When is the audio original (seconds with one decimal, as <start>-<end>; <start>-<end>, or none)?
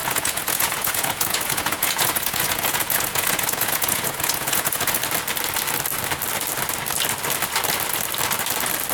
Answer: 5.0-8.9